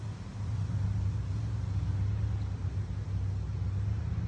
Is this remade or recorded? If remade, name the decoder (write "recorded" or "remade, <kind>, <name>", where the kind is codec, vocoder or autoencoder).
recorded